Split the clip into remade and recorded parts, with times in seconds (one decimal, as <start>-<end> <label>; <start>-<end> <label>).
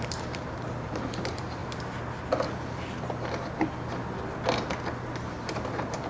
0.0-1.6 remade; 1.6-5.3 recorded; 5.3-6.1 remade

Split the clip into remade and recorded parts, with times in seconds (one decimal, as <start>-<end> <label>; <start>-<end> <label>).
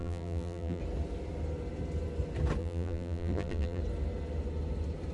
0.0-0.8 remade; 0.8-2.6 recorded; 2.6-3.8 remade; 3.8-5.1 recorded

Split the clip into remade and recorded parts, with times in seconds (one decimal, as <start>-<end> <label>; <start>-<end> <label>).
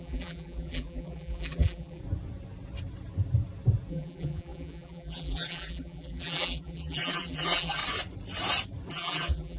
0.0-2.0 remade; 2.0-3.9 recorded; 3.9-7.8 remade; 7.8-8.9 recorded; 8.9-9.6 remade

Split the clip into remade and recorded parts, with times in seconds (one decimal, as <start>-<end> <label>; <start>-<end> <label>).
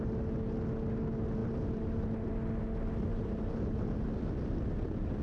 0.0-1.4 recorded; 1.4-2.3 remade; 2.3-3.1 recorded; 3.1-3.9 remade; 3.9-5.2 recorded